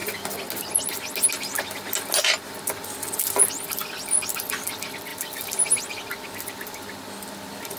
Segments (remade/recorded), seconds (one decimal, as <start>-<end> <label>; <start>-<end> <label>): 0.0-5.1 recorded; 5.1-5.7 remade; 5.7-7.8 recorded